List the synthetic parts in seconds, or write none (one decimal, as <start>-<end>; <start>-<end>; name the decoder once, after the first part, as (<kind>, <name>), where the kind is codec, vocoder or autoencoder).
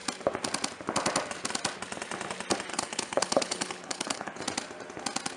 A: 2.7-4.4 (codec, HILCodec)